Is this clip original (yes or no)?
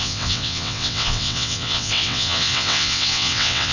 no